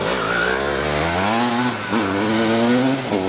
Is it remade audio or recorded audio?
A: recorded